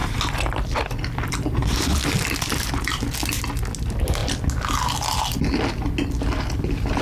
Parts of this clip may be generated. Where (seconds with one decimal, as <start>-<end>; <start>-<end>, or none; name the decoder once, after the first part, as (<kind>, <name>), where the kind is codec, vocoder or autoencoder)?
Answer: none